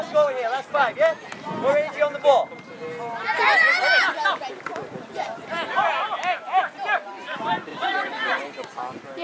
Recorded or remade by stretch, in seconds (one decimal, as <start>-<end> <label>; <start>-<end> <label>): 0.0-7.7 recorded; 7.7-8.4 remade; 8.4-9.2 recorded